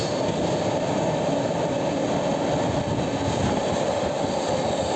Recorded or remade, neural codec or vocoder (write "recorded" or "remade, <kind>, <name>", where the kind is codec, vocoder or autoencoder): recorded